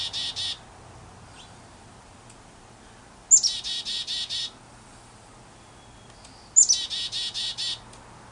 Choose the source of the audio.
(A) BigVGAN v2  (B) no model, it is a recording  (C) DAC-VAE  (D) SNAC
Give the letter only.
B